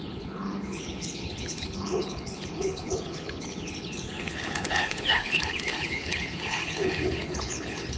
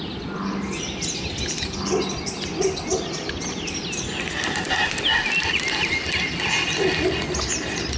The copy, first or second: first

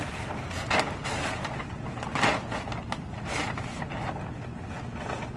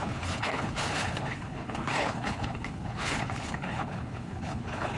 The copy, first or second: second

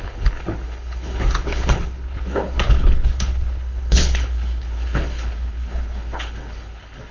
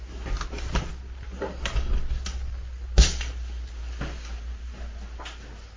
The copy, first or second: first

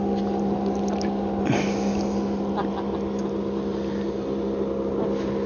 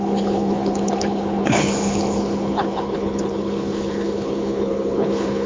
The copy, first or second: second